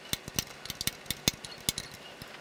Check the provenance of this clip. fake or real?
real